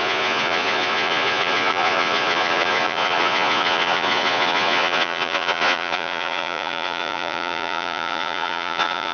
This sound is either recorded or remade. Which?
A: remade